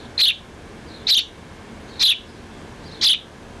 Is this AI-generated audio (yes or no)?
no